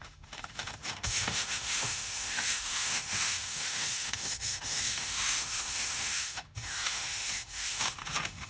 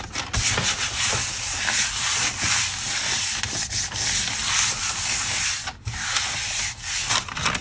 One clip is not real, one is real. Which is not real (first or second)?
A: first